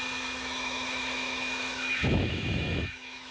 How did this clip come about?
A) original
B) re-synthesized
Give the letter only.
B